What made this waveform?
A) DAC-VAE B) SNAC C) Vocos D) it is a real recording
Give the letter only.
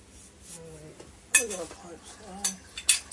D